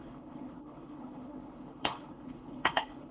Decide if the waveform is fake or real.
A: fake